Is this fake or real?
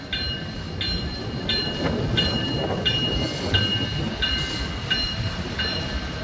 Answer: real